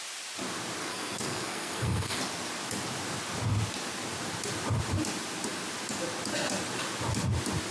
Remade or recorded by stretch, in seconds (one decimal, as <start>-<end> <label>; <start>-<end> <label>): 0.0-0.8 recorded; 0.8-2.2 remade; 2.2-7.7 recorded